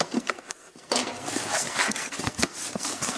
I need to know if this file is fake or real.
fake